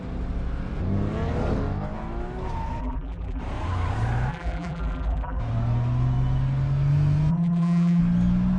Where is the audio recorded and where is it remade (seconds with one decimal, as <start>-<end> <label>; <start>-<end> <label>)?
0.0-2.8 recorded; 2.8-3.4 remade; 3.4-4.3 recorded; 4.3-5.4 remade; 5.4-7.3 recorded; 7.3-8.0 remade; 8.0-8.6 recorded